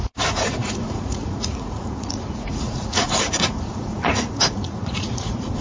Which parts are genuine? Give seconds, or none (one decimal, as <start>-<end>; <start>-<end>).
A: none